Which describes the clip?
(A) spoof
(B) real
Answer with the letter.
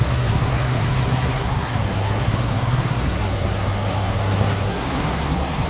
A